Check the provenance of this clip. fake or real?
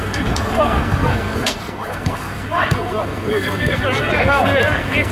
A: fake